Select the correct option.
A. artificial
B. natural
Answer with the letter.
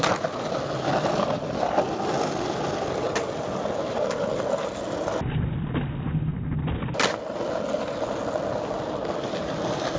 B